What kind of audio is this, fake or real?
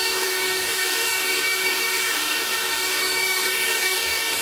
fake